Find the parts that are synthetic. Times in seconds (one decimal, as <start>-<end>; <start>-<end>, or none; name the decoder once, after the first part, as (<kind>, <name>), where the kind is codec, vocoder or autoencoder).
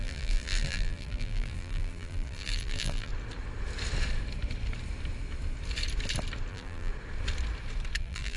0.0-3.1 (vocoder, BigVGAN v2); 6.5-6.9; 8.0-8.4